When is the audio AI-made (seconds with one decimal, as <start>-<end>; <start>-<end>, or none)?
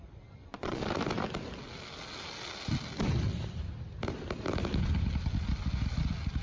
0.4-0.9